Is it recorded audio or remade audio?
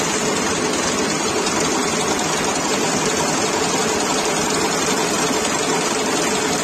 recorded